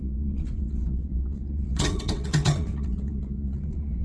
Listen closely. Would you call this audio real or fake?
fake